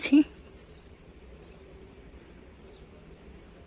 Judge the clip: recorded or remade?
recorded